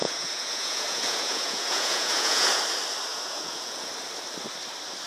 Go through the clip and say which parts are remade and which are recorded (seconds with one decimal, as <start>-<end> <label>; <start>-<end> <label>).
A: 0.0-2.6 remade; 2.6-3.1 recorded; 3.1-3.9 remade; 3.9-5.1 recorded